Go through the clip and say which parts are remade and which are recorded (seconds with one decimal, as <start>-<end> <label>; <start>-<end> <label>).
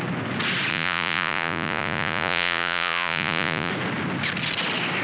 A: 0.0-0.7 recorded; 0.7-3.7 remade; 3.7-5.0 recorded